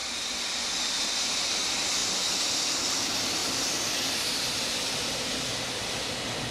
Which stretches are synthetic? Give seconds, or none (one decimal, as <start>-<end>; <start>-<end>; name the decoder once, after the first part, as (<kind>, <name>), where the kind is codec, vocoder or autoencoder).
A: 3.4-4.5 (vocoder, BigVGAN v2)